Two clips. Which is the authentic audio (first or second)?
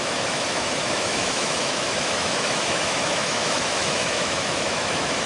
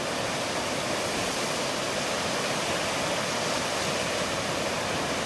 second